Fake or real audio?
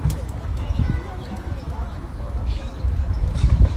fake